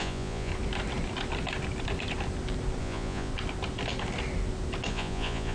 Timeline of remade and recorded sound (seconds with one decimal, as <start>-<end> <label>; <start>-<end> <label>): 0.0-0.5 remade; 0.5-2.8 recorded; 2.8-3.3 remade; 3.3-4.9 recorded; 4.9-5.5 remade